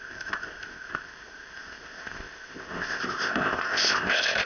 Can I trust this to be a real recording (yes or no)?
no